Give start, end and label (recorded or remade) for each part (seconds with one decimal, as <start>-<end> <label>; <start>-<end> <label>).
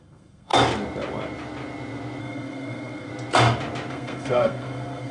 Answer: 0.0-0.5 remade; 0.5-2.2 recorded; 2.2-3.1 remade; 3.1-3.9 recorded; 3.9-5.1 remade